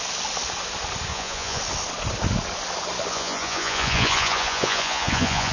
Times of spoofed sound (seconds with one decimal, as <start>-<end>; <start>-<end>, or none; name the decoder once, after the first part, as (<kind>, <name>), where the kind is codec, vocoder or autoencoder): 1.1-1.6 (vocoder, Vocos); 3.1-5.5